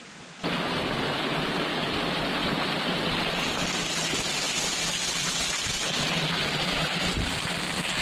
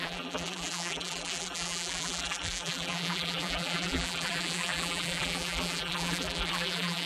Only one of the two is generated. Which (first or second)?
second